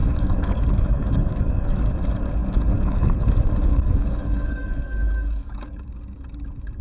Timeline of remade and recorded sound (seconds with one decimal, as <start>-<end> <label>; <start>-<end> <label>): 0.0-1.9 remade; 1.9-2.4 recorded; 2.4-3.2 remade; 3.2-3.7 recorded; 3.7-5.9 remade; 5.9-6.8 recorded